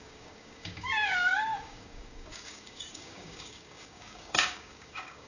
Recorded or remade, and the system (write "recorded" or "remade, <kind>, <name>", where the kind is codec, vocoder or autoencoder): remade, codec, DAC